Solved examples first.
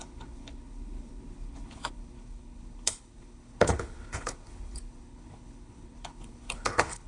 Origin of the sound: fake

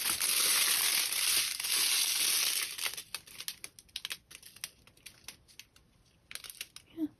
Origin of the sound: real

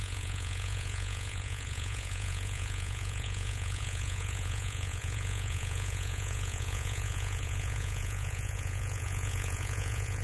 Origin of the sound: fake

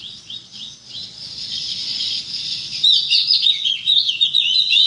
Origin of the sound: fake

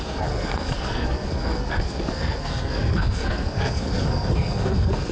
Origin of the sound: fake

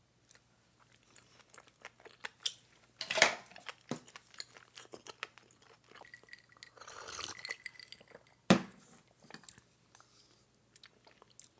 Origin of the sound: real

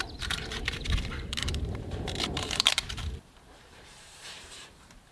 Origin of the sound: fake